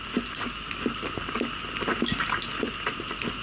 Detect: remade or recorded recorded